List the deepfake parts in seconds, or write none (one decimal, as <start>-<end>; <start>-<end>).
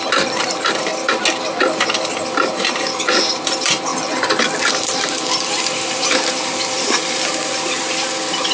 0.0-0.9; 2.5-3.9; 4.4-8.5